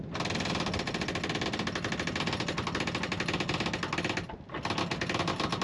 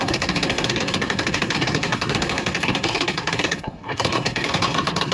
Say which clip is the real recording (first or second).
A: first